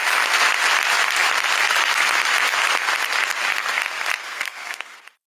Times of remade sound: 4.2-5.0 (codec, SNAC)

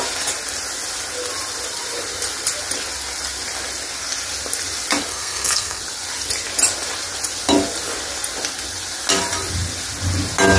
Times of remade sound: 5.1-5.8 (codec, SNAC)

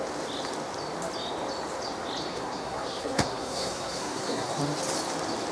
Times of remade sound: 2.3-4.6 (codec, SNAC)